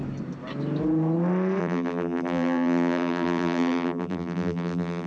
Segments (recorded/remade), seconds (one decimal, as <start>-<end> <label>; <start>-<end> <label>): 0.0-1.6 recorded; 1.6-5.1 remade